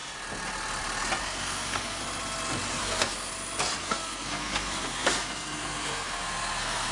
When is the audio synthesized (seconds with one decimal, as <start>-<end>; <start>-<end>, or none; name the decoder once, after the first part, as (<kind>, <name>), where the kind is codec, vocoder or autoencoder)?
1.2-2.0 (codec, SNAC); 2.7-3.3; 3.8-6.9